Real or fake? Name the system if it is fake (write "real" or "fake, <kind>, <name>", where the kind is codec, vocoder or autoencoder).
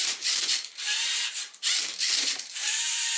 fake, vocoder, BigVGAN v2